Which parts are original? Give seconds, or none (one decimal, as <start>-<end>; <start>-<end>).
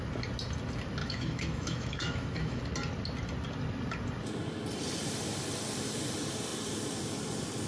0.0-1.0; 2.6-7.7